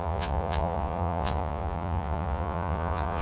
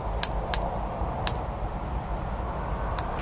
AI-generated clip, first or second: first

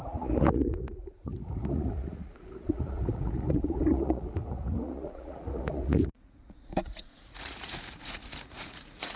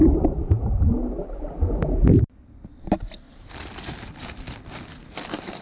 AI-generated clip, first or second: first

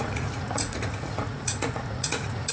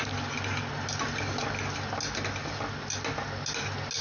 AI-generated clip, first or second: first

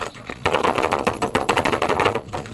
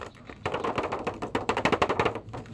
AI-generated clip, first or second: first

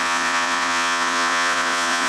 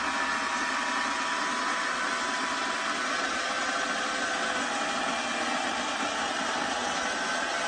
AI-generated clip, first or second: first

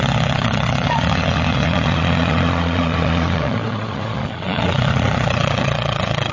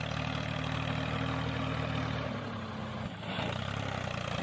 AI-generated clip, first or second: first